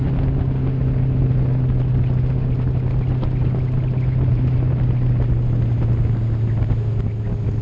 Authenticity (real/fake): real